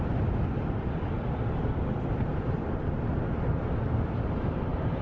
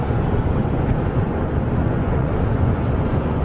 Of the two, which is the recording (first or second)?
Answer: first